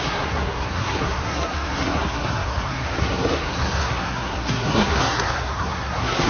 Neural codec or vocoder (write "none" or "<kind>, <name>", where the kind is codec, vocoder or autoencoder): codec, SNAC